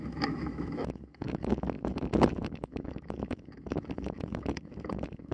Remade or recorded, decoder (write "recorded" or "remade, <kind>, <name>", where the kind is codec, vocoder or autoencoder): remade, autoencoder, DAC-VAE